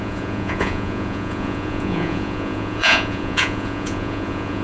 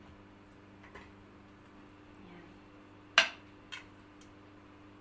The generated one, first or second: first